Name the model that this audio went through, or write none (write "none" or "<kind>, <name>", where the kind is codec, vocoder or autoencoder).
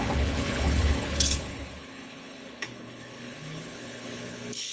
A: codec, HILCodec